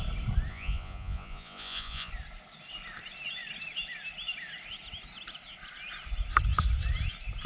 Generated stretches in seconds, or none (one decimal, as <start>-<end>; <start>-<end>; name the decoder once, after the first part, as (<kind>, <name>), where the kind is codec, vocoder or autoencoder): 0.5-2.1 (vocoder, Vocos)